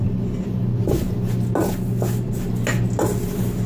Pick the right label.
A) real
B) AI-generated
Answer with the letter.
A